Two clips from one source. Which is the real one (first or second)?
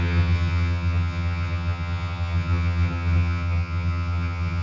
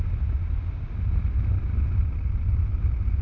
second